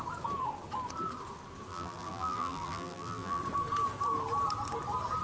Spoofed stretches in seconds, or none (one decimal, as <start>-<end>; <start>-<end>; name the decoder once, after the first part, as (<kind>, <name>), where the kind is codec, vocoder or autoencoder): 1.7-3.4 (vocoder, BigVGAN v2)